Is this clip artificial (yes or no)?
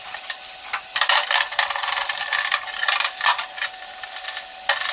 no